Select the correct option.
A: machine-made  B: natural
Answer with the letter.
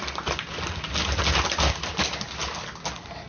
B